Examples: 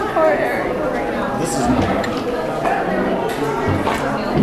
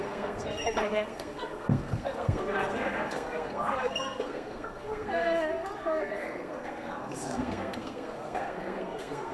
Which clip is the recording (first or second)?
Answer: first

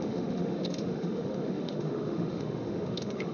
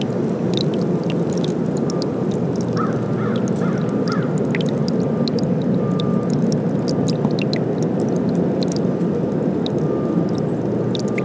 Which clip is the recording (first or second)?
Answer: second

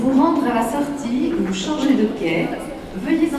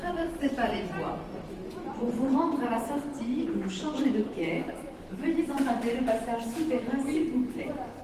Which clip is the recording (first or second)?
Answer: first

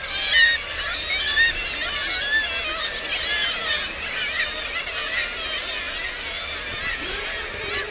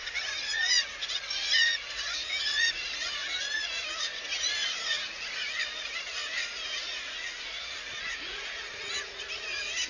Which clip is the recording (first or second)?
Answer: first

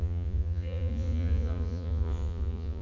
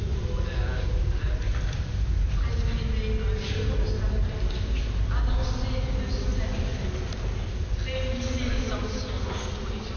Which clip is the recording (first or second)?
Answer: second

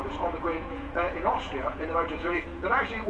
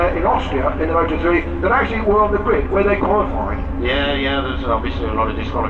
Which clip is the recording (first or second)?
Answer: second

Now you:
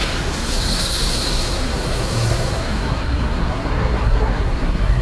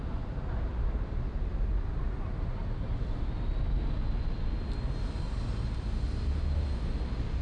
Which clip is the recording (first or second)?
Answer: second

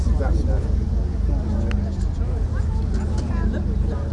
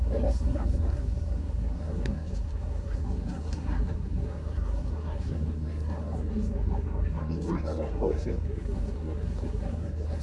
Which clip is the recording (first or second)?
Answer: first